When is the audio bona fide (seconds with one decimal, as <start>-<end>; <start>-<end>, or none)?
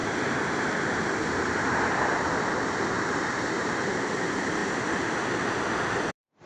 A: 4.6-6.1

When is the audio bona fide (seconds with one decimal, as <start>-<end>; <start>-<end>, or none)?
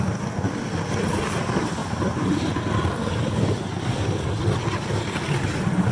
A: 0.0-1.8; 2.5-5.9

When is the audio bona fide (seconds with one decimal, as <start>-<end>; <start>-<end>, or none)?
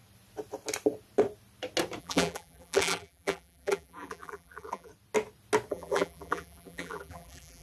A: 0.0-2.0; 4.9-5.7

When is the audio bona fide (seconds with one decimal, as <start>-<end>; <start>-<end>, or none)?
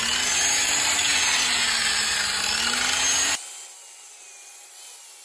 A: 0.0-5.2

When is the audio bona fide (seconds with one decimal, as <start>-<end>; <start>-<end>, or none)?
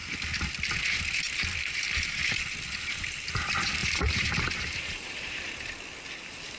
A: 0.0-3.8; 5.5-6.6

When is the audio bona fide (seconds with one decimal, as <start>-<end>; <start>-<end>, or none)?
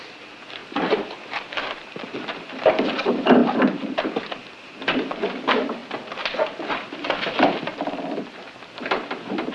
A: 5.8-6.7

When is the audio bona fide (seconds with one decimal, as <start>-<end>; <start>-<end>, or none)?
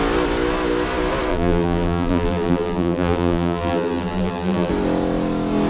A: 0.0-1.3; 4.7-5.7